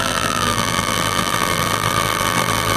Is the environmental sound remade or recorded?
remade